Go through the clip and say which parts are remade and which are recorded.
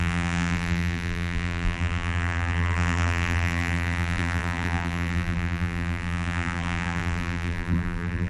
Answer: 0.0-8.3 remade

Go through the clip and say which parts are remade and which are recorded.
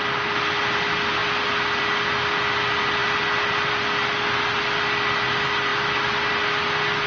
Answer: 0.0-7.1 recorded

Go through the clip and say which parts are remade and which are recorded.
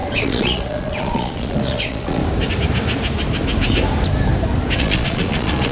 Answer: 0.0-2.2 remade; 2.2-4.8 recorded; 4.8-5.7 remade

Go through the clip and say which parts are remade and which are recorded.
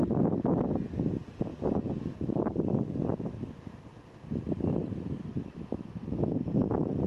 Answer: 0.0-7.1 recorded